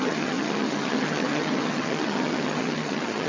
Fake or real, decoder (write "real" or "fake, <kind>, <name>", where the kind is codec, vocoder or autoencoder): fake, vocoder, HiFi-GAN